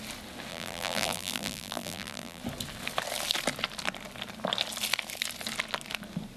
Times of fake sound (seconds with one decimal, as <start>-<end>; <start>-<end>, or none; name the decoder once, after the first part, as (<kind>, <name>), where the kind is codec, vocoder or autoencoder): 0.5-2.4 (vocoder, BigVGAN v2)